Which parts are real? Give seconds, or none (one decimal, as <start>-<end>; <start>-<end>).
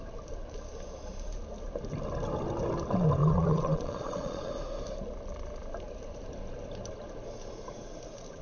0.0-3.2; 4.5-8.4